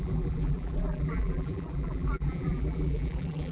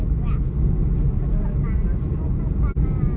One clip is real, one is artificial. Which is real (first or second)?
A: second